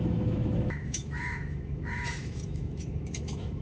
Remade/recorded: remade